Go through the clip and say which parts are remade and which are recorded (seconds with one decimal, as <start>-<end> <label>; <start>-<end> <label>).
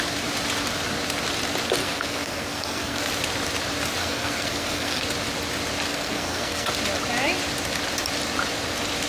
0.0-1.8 recorded; 1.8-3.0 remade; 3.0-4.0 recorded; 4.0-5.0 remade; 5.0-5.9 recorded; 5.9-6.7 remade; 6.7-9.1 recorded